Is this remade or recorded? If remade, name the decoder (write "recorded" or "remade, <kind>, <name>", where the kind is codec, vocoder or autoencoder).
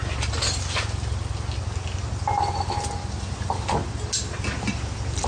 recorded